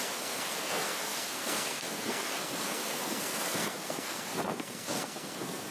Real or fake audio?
fake